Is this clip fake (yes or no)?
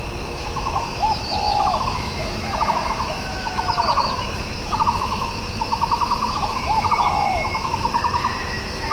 yes